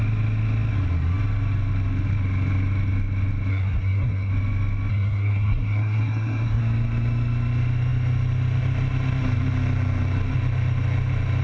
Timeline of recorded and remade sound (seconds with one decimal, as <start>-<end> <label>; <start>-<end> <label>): 0.0-3.5 recorded; 3.5-4.3 remade; 4.3-4.9 recorded; 4.9-6.6 remade; 6.6-11.4 recorded